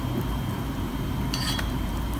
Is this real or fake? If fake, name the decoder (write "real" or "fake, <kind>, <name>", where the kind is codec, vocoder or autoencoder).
fake, vocoder, BigVGAN v2